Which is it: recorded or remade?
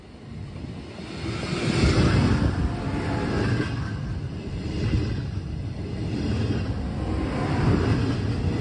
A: recorded